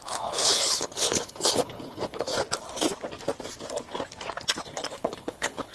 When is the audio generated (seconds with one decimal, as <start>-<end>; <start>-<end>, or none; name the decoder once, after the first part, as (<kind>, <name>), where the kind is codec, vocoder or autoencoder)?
0.0-2.3 (codec, HILCodec); 4.9-5.7